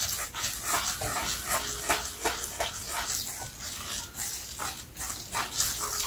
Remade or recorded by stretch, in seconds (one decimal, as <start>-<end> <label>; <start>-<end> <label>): 0.0-6.1 recorded